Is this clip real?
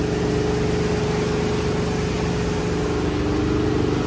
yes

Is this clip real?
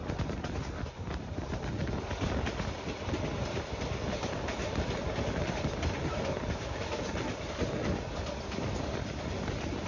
yes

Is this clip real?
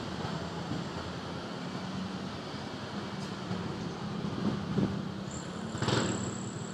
yes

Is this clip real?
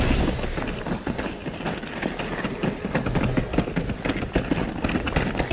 yes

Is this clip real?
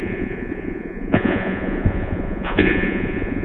no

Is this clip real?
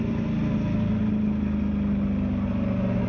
yes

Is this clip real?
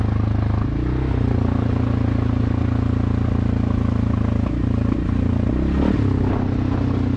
yes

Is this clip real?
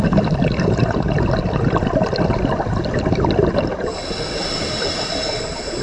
yes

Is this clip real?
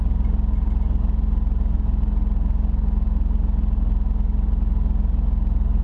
yes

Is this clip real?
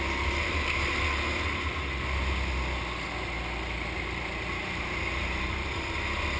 yes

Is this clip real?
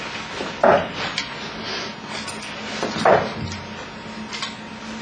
yes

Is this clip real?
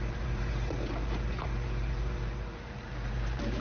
no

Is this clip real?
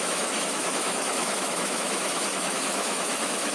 no